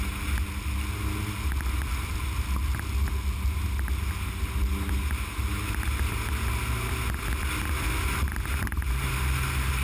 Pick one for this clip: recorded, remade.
recorded